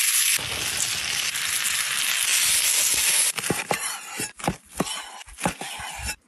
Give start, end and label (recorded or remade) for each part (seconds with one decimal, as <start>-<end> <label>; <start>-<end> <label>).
0.0-6.3 recorded